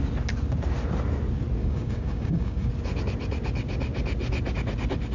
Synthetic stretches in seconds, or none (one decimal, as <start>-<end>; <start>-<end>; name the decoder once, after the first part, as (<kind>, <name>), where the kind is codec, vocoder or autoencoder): 1.6-2.7 (codec, DAC)